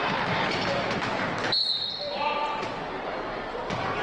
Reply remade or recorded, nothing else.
remade